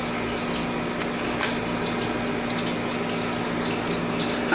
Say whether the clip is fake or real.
real